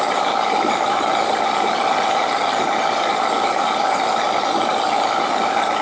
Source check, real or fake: real